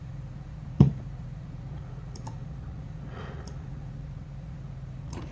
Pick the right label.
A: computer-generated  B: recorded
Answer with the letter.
A